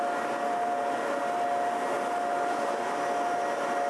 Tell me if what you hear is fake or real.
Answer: real